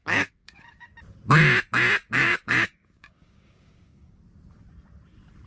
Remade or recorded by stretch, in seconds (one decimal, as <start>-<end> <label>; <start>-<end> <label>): 0.0-0.9 remade; 0.9-2.0 recorded; 2.0-4.2 remade; 4.2-5.5 recorded